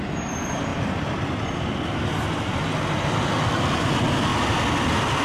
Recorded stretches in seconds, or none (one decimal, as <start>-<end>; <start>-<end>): 0.0-5.2